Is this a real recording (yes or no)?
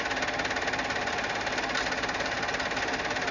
yes